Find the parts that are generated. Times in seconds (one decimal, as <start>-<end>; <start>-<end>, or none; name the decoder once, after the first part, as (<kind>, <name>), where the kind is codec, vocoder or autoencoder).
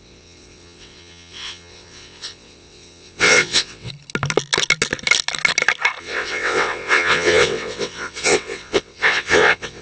0.0-3.9 (vocoder, WaveNeXt); 6.0-9.8